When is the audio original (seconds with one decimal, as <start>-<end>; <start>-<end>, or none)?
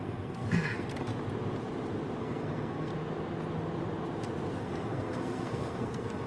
1.1-2.2; 2.9-4.6